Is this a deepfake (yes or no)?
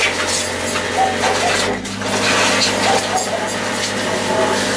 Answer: no